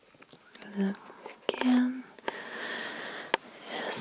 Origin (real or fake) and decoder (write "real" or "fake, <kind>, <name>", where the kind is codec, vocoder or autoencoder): real